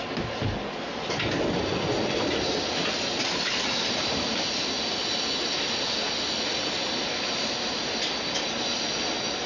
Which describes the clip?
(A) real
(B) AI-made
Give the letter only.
A